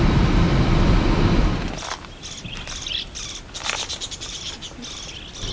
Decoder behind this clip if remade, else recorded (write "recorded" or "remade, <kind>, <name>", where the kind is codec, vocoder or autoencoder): recorded